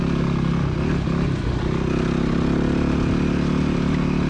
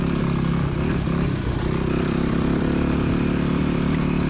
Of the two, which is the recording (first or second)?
first